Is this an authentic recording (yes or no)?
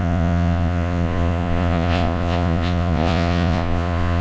no